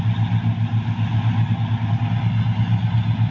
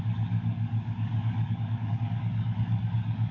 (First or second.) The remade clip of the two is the second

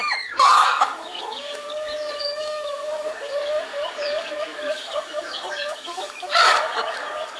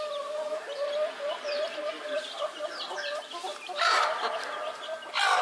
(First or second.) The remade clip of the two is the first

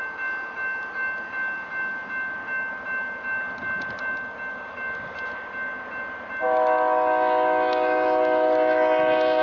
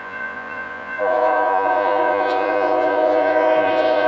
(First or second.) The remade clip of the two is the second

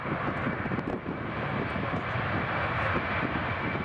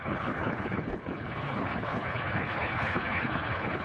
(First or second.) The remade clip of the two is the second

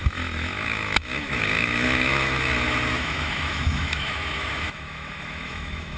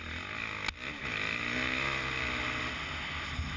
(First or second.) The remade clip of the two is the first